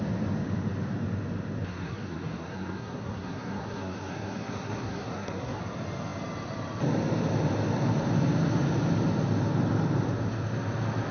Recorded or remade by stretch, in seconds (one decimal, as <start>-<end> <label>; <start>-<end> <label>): 0.0-1.7 recorded; 1.7-5.6 remade; 5.6-11.1 recorded